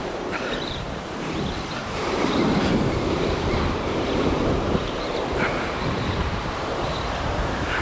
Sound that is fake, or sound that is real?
fake